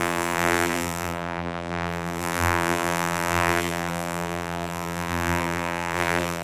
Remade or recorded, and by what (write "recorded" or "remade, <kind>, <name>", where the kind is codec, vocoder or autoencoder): remade, vocoder, BigVGAN v2